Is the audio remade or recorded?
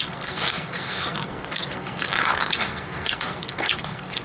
remade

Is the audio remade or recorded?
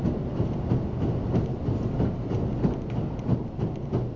recorded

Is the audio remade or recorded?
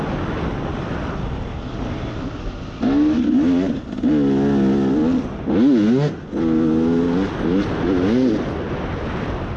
recorded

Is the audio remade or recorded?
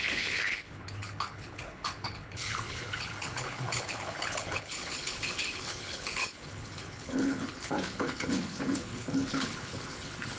remade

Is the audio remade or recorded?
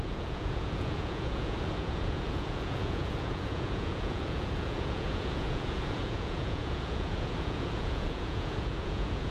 remade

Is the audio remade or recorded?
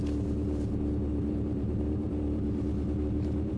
remade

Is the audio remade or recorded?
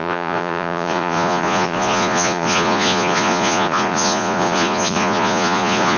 remade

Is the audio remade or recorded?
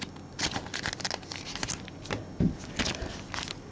recorded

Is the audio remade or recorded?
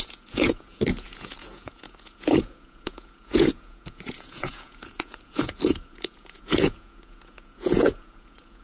remade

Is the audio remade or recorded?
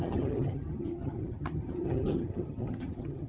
remade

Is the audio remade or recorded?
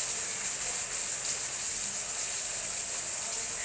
recorded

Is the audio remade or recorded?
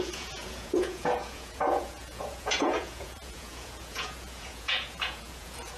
remade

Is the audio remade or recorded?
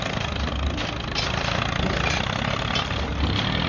recorded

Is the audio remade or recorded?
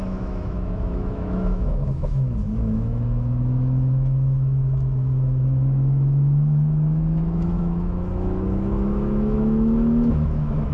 remade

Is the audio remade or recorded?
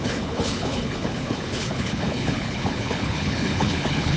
remade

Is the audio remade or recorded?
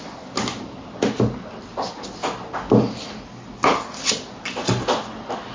recorded